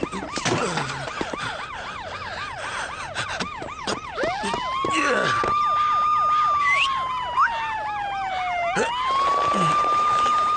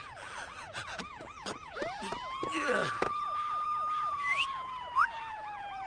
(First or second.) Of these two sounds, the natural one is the first